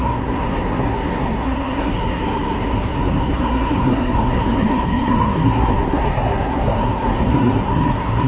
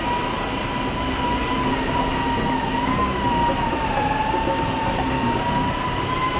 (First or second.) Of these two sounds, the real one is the second